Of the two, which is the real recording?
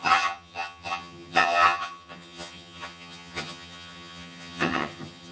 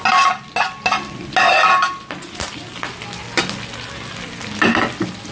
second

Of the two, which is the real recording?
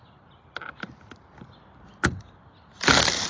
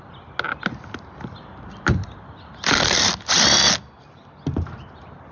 second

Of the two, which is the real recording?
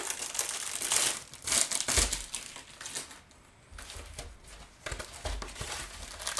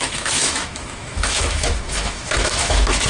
first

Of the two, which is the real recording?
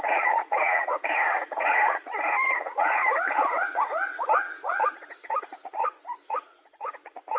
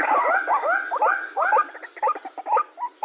second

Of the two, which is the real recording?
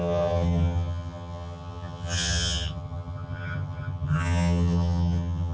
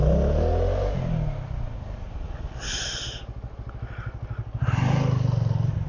second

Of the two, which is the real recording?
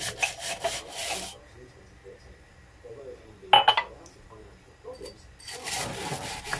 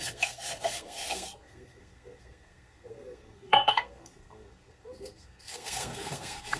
first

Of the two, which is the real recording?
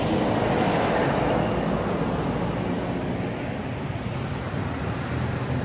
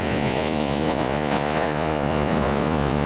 first